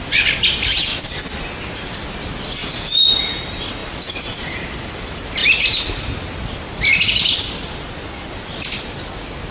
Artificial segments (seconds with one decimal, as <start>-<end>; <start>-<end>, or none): 2.6-3.4

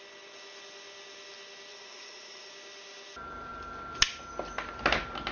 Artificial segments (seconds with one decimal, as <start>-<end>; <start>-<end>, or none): 1.7-2.5

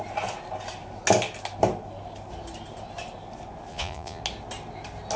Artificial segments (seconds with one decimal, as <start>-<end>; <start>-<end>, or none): 3.7-4.2

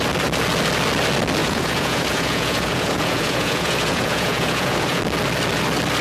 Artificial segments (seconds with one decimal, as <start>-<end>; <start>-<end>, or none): 1.4-5.0

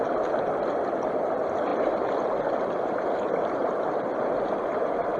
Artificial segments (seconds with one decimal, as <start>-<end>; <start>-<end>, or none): none